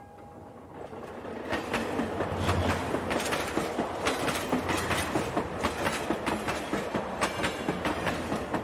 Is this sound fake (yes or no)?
no